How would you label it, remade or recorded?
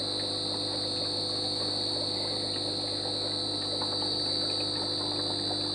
recorded